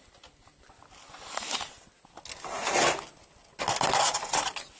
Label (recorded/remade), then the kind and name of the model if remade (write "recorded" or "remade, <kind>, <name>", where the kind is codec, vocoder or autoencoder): recorded